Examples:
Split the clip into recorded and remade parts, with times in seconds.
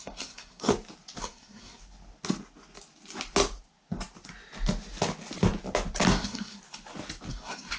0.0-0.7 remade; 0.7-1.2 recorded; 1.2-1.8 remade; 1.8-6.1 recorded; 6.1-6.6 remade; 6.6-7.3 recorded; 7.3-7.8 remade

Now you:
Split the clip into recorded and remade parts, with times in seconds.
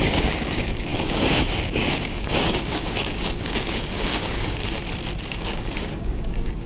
0.0-4.8 remade; 4.8-5.3 recorded; 5.3-6.7 remade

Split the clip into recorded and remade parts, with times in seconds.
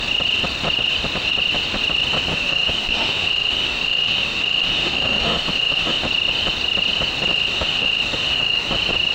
0.0-2.3 recorded; 2.3-6.0 remade; 6.0-7.3 recorded; 7.3-8.7 remade; 8.7-9.1 recorded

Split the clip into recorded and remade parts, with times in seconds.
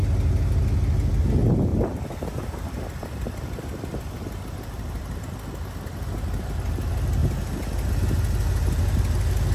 0.0-1.7 recorded; 1.7-5.2 remade; 5.2-7.2 recorded; 7.2-7.9 remade; 7.9-9.5 recorded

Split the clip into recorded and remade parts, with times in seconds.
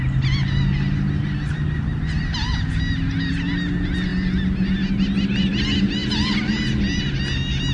0.0-7.7 recorded